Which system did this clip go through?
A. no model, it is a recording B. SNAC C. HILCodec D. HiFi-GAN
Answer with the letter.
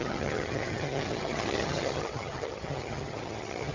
D